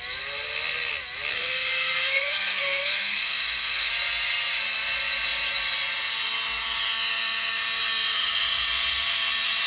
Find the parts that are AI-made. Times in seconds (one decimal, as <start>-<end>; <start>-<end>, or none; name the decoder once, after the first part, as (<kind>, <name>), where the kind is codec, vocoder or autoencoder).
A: 1.3-3.9 (codec, SNAC)